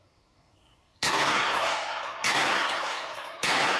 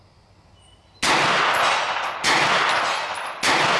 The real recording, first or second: second